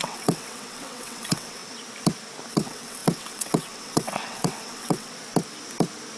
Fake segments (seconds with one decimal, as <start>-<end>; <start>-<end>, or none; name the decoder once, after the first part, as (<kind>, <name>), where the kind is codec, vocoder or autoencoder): 0.0-1.6 (vocoder, WaveNeXt); 2.5-5.1